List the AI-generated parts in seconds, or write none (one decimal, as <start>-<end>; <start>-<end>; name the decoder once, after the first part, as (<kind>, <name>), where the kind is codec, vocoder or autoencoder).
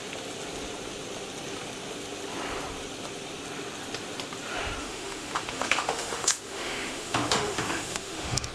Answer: 4.8-8.5 (autoencoder, DAC-VAE)